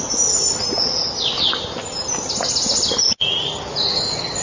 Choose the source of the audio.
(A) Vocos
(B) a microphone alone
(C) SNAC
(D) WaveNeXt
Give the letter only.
B